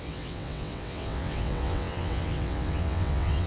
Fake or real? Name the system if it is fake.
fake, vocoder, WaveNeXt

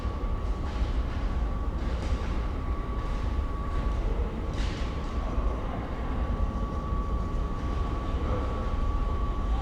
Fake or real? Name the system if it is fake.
fake, vocoder, BigVGAN v2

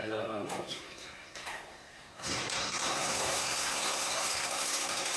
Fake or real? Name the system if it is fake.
fake, codec, SNAC